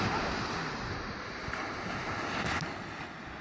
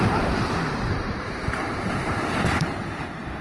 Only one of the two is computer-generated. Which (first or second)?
second